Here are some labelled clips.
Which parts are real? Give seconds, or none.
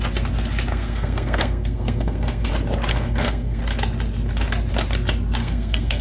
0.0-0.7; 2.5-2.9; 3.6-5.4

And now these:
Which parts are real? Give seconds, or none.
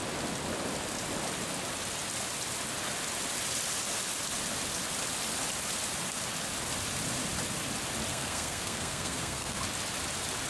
0.0-8.1; 9.6-10.5